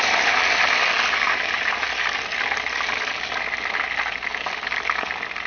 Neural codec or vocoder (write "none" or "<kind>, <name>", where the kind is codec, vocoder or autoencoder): none